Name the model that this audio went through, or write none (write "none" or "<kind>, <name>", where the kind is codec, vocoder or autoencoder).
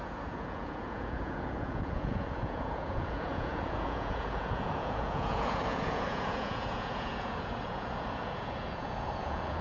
vocoder, Vocos